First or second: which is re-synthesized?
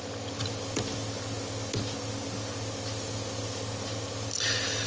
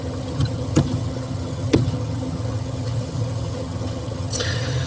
second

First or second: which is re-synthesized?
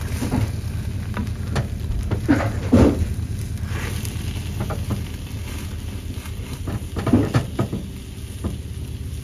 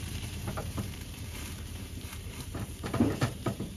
second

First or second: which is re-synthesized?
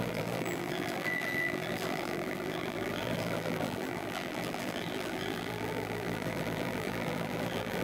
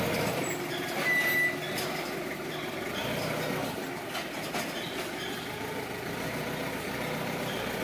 first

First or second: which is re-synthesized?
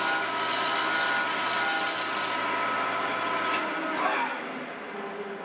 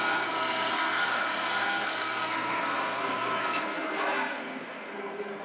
second